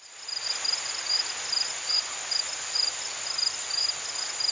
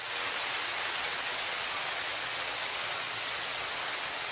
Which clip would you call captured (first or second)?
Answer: first